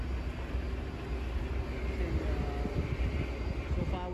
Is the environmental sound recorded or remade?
recorded